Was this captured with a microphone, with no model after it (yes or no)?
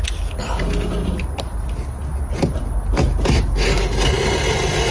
yes